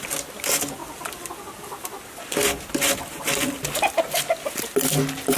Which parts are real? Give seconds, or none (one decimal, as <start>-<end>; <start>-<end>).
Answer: 0.0-5.4